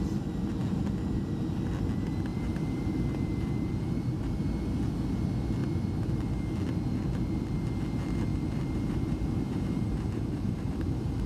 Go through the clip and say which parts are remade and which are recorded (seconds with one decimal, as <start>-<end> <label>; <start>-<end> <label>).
0.0-2.3 recorded; 2.3-3.7 remade; 3.7-8.3 recorded; 8.3-11.3 remade